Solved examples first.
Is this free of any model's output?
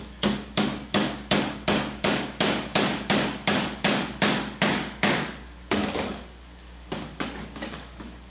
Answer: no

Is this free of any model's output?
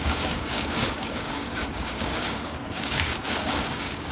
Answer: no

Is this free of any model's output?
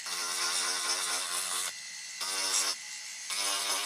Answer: yes